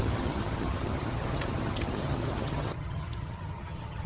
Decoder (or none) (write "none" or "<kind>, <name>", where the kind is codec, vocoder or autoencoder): vocoder, HiFi-GAN